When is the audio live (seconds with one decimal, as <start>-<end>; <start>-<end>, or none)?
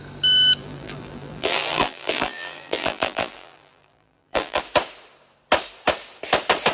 0.0-0.6; 4.6-6.7